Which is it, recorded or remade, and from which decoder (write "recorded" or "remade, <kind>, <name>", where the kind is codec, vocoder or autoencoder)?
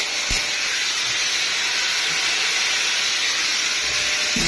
recorded